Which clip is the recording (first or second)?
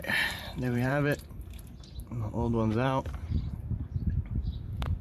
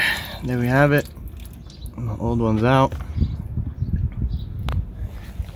second